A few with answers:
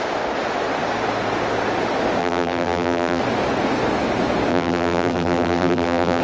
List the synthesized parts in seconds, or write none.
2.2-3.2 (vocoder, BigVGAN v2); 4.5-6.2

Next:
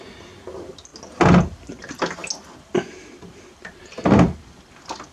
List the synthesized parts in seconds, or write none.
none

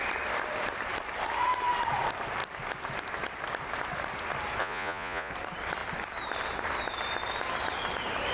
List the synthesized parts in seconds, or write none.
4.6-5.3 (vocoder, Vocos)